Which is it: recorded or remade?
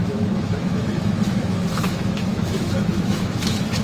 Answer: remade